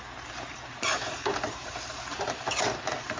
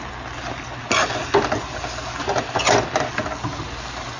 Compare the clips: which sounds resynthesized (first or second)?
first